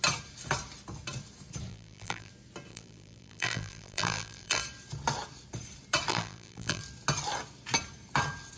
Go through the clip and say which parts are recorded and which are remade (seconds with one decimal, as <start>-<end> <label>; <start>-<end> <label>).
0.0-1.7 recorded; 1.7-2.3 remade; 2.3-2.7 recorded; 2.7-4.6 remade; 4.6-6.1 recorded; 6.1-6.8 remade; 6.8-8.6 recorded